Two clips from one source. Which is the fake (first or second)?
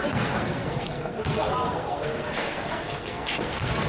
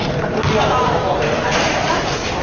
first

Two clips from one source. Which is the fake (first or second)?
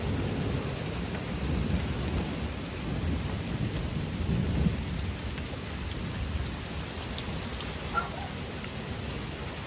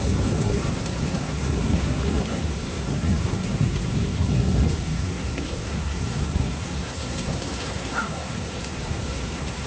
second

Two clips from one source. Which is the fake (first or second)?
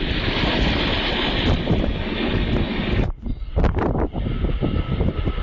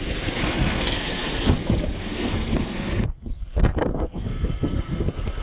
second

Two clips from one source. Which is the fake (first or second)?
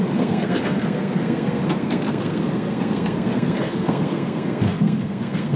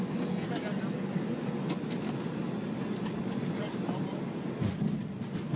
first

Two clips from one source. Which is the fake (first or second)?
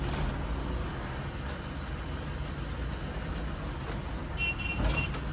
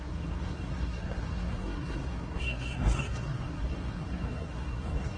second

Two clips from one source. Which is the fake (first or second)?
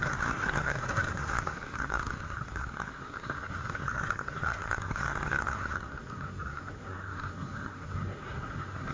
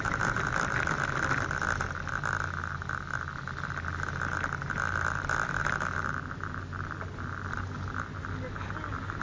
first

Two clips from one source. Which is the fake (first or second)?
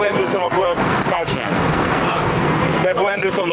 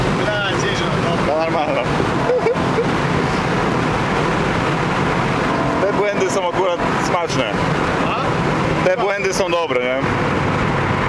first